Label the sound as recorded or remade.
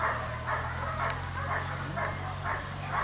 recorded